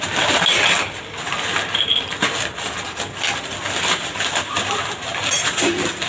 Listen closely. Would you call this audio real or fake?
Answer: real